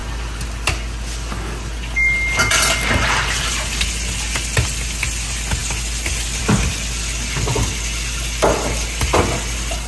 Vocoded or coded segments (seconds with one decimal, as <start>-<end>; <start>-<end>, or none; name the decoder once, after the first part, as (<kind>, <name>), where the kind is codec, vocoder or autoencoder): none